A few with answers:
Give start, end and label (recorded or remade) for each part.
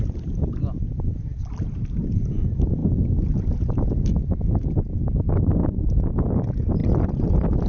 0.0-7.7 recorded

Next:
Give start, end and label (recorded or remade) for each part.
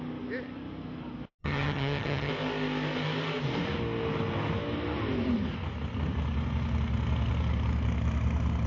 0.0-1.4 recorded; 1.4-2.3 remade; 2.3-8.7 recorded